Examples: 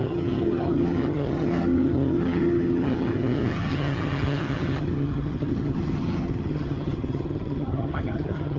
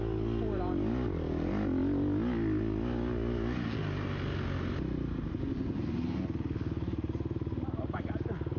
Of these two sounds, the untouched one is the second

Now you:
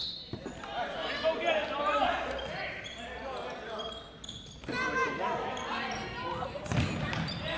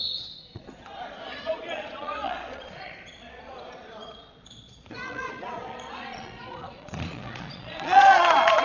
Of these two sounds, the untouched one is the first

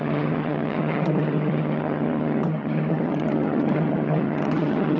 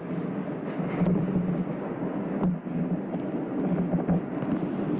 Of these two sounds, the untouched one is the second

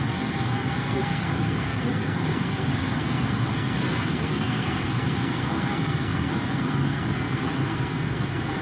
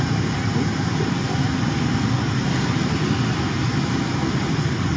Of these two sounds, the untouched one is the second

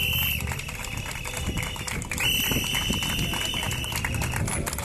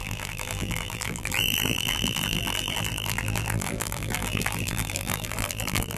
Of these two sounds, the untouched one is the first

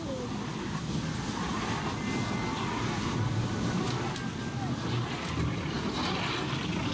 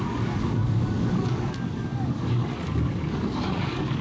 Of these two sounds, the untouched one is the first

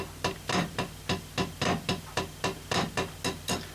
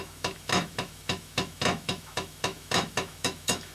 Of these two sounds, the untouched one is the first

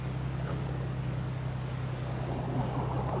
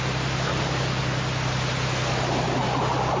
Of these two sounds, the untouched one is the second